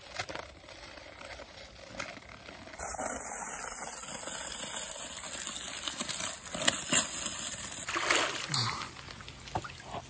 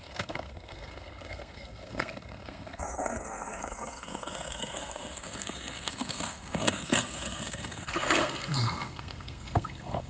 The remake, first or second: second